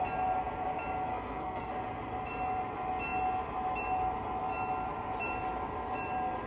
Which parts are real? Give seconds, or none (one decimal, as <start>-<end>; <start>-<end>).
0.0-1.1; 1.7-6.5